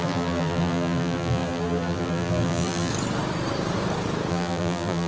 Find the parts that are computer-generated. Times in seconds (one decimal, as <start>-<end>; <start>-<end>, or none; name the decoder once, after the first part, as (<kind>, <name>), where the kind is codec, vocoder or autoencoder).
0.0-2.9 (vocoder, BigVGAN v2); 4.3-5.1